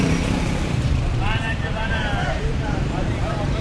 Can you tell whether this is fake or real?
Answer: fake